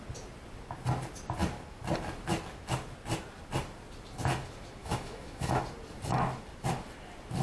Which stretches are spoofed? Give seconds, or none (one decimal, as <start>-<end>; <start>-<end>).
4.8-5.6